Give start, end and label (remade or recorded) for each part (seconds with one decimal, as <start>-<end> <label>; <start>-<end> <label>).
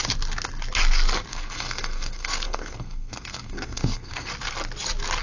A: 0.0-1.3 recorded; 1.3-4.3 remade; 4.3-5.2 recorded